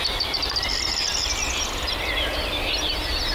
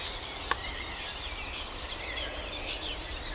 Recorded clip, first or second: first